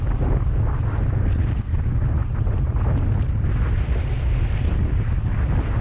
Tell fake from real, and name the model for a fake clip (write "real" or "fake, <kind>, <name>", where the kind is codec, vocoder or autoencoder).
real